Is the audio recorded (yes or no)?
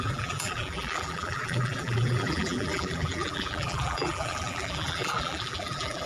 no